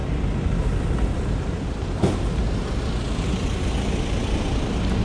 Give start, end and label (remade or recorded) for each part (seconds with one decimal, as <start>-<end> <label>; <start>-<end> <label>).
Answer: 0.0-5.0 recorded